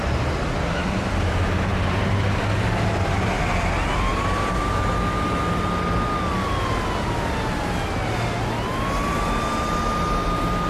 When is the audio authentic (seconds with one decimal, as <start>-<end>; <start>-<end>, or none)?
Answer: 0.0-1.7; 3.5-10.7